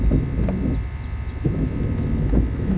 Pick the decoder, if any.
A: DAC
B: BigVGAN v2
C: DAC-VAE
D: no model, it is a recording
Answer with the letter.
D